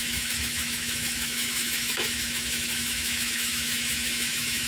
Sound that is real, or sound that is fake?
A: fake